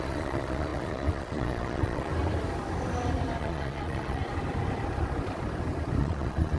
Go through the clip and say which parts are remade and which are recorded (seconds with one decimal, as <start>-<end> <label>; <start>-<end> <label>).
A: 0.0-2.1 remade; 2.1-3.4 recorded; 3.4-4.2 remade; 4.2-6.0 recorded; 6.0-6.6 remade